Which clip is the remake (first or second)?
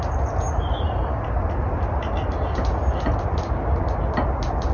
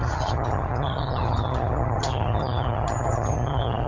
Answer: second